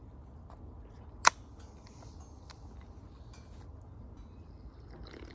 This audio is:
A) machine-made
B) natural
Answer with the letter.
B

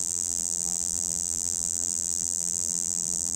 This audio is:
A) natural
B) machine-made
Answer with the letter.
B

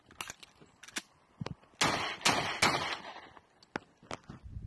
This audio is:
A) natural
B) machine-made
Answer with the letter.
A